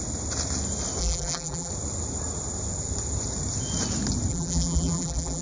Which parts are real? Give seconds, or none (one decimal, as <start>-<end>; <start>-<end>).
0.0-1.0; 1.7-4.3